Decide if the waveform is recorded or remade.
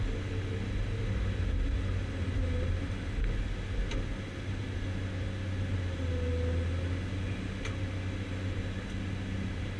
recorded